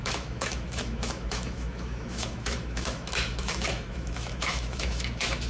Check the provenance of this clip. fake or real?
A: fake